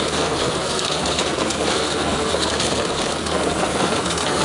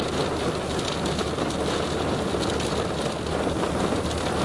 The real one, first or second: second